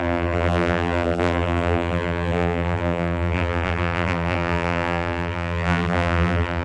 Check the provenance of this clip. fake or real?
fake